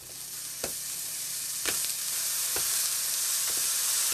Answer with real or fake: real